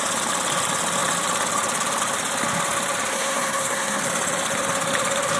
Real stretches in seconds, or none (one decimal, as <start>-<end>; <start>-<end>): 0.0-3.1; 4.0-5.4